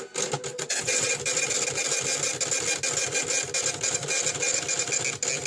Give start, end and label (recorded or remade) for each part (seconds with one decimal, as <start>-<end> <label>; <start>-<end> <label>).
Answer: 0.0-0.5 recorded; 0.5-1.1 remade; 1.1-5.5 recorded